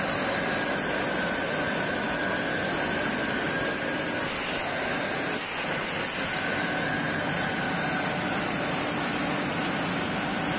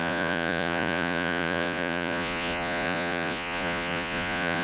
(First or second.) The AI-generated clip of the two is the second